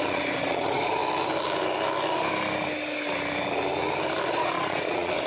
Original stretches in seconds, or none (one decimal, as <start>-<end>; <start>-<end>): 1.0-4.2